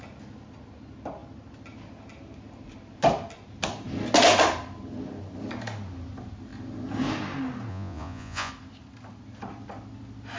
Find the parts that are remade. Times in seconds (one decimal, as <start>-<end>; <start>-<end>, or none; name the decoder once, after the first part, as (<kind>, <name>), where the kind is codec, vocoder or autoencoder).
7.7-8.5 (vocoder, Vocos)